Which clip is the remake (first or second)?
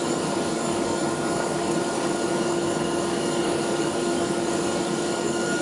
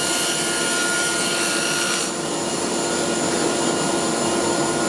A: first